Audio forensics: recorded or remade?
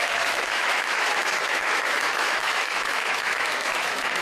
remade